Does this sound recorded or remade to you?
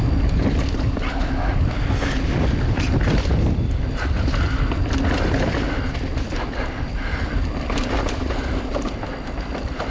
recorded